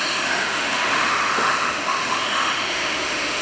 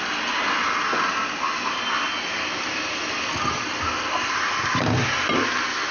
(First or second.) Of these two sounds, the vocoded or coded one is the first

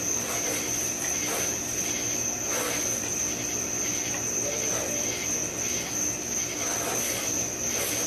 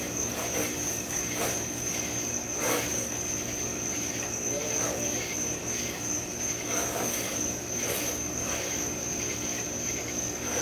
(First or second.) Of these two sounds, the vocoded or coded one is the second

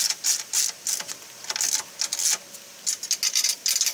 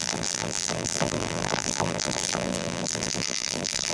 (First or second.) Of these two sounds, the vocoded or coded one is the second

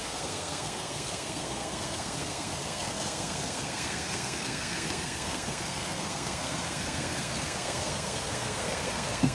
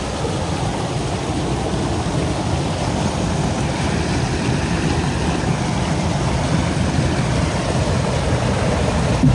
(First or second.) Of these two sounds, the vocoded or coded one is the first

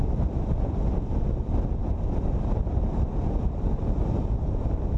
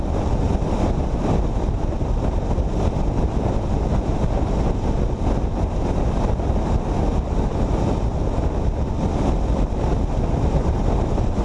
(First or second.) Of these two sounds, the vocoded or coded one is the first